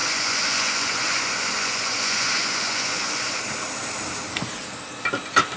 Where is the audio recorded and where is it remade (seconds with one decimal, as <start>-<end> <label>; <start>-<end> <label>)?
0.0-3.4 remade; 3.4-5.6 recorded